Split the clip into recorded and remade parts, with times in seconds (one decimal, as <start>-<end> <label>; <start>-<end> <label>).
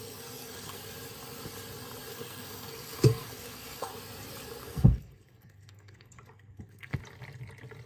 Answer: 0.0-0.8 remade; 0.8-2.1 recorded; 2.1-3.9 remade; 3.9-4.6 recorded; 4.6-7.0 remade; 7.0-7.9 recorded